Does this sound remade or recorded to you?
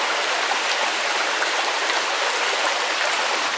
recorded